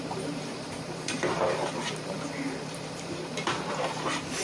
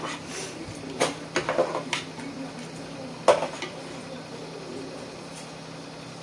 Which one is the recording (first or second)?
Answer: second